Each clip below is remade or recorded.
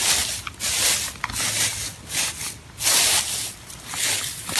recorded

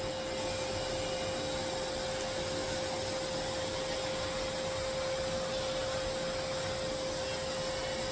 recorded